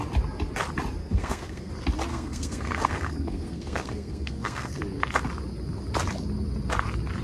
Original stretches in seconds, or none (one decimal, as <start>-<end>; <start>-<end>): 0.0-1.0; 1.7-2.1; 4.8-7.2